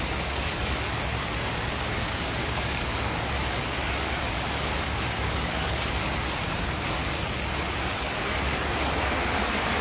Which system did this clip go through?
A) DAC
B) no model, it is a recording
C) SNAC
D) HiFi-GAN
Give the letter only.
A